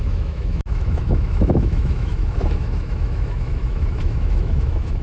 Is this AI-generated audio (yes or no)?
yes